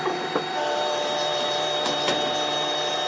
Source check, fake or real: fake